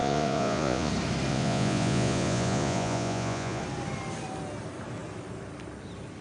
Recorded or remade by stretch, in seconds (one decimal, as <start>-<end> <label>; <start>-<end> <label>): 0.0-0.9 remade; 0.9-1.3 recorded; 1.3-3.6 remade; 3.6-6.2 recorded